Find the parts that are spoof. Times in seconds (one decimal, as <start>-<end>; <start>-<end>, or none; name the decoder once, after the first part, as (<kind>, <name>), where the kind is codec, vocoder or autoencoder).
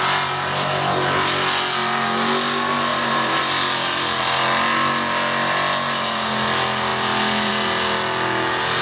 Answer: 2.9-3.4 (vocoder, BigVGAN v2)